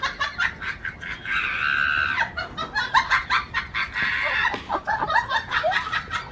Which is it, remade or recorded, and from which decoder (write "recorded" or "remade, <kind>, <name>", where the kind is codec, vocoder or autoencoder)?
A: remade, vocoder, BigVGAN v2